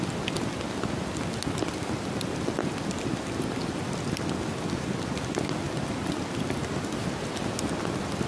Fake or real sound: real